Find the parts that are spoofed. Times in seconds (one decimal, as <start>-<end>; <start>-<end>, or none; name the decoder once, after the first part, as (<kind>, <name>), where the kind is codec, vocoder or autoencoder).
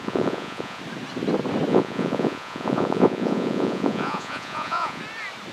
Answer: 0.0-0.8 (vocoder, Vocos); 1.7-5.0